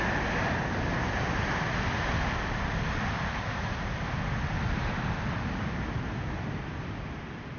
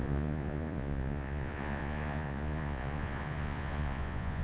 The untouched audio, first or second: first